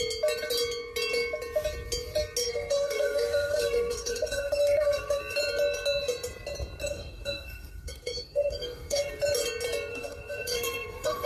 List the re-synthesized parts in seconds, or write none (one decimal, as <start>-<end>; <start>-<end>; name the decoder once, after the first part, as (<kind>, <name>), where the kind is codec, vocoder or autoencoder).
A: 2.4-5.2 (codec, SNAC); 6.8-9.1; 9.9-11.3